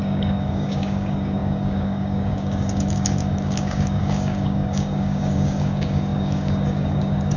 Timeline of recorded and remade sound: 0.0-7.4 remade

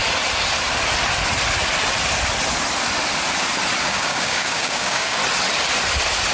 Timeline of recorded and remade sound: 0.0-3.8 recorded; 3.8-5.2 remade; 5.2-6.3 recorded

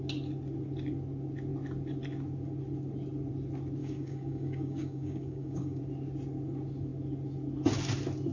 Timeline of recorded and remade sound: 0.0-3.8 recorded; 3.8-5.8 remade; 5.8-8.3 recorded